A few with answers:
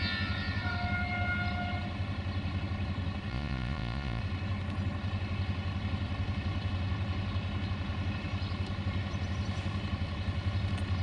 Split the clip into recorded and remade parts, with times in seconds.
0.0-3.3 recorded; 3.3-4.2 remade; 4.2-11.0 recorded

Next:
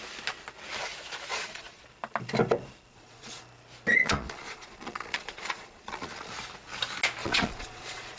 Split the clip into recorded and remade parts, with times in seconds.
0.0-1.3 recorded; 1.3-1.8 remade; 1.8-2.9 recorded; 2.9-3.4 remade; 3.4-4.0 recorded; 4.0-6.3 remade; 6.3-7.2 recorded; 7.2-8.2 remade

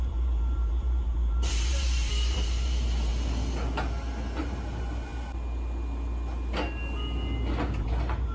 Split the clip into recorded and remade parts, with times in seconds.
0.0-3.1 remade; 3.1-4.4 recorded; 4.4-5.1 remade; 5.1-7.8 recorded; 7.8-8.3 remade

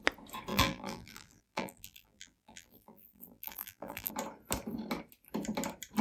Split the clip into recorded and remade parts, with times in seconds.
0.0-0.5 recorded; 0.5-4.1 remade; 4.1-6.0 recorded

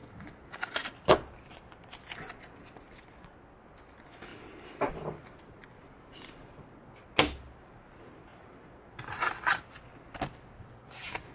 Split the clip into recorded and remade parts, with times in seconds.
0.0-11.3 recorded

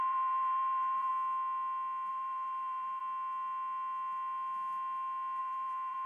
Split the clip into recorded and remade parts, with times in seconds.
0.0-1.1 remade; 1.1-2.1 recorded; 2.1-3.0 remade; 3.0-5.4 recorded; 5.4-6.1 remade

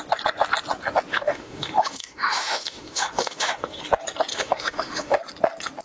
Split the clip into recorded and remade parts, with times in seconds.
0.0-1.1 recorded; 1.1-3.8 remade; 3.8-4.3 recorded; 4.3-5.2 remade; 5.2-5.8 recorded

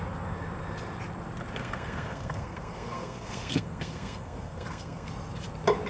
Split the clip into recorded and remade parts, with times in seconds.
0.0-1.6 recorded; 1.6-5.1 remade; 5.1-5.9 recorded